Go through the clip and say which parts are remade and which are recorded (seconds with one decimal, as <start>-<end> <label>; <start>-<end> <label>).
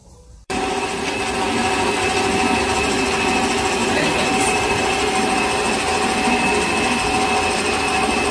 0.0-0.8 remade; 0.8-3.8 recorded; 3.8-5.4 remade; 5.4-8.3 recorded